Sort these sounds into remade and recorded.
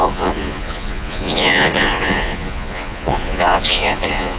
remade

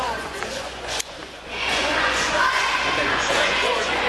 remade